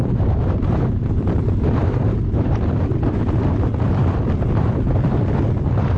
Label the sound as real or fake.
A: fake